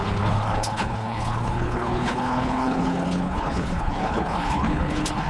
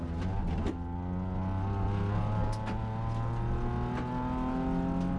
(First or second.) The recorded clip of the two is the second